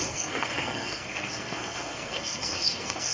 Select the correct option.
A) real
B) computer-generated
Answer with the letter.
B